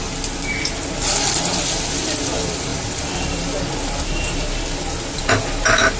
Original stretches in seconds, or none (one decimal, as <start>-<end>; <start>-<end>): 0.0-6.0